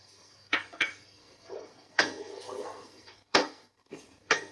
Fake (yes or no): yes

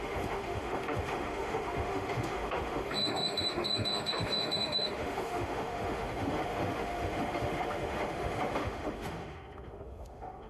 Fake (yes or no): yes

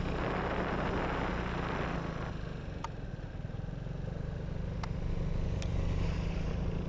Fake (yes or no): no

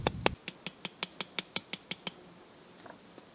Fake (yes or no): no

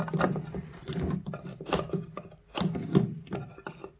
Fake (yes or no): no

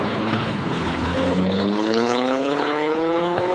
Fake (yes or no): yes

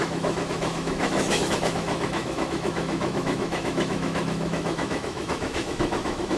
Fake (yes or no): yes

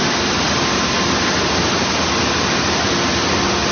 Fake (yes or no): no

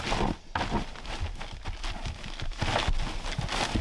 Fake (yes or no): no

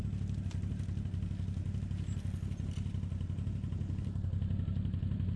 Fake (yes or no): no